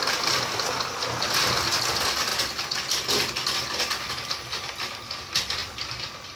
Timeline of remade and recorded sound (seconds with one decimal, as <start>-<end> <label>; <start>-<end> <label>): 0.0-6.4 recorded

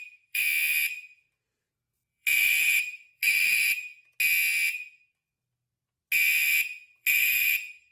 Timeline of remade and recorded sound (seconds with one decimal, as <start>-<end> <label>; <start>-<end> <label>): 0.0-0.4 remade; 0.4-1.6 recorded; 1.6-3.9 remade; 3.9-6.9 recorded; 6.9-7.9 remade

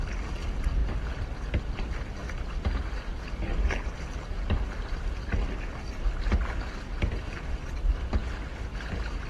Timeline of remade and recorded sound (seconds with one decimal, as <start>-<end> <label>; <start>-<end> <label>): 0.0-9.3 recorded

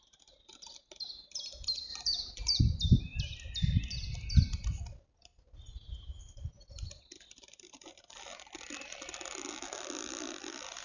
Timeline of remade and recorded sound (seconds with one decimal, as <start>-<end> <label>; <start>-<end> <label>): 0.0-1.9 recorded; 1.9-2.6 remade; 2.6-5.3 recorded; 5.3-8.5 remade; 8.5-10.8 recorded

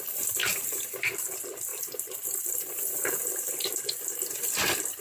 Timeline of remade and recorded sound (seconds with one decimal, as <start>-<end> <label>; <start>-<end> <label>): 0.0-0.4 recorded; 0.4-1.2 remade; 1.2-5.0 recorded

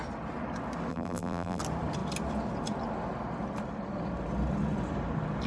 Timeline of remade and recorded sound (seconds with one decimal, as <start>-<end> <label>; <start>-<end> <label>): 0.0-0.9 recorded; 0.9-1.6 remade; 1.6-5.5 recorded

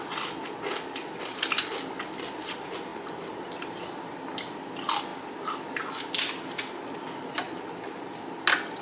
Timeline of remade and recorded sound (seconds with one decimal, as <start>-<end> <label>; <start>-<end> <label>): 0.0-2.9 recorded; 2.9-4.2 remade; 4.2-5.1 recorded; 5.1-5.9 remade; 5.9-8.8 recorded

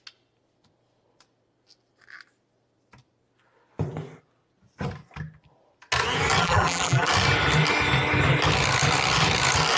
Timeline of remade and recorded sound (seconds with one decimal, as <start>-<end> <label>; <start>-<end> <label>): 0.0-6.4 recorded; 6.4-7.1 remade; 7.1-9.8 recorded